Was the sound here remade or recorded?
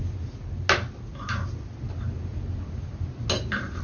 recorded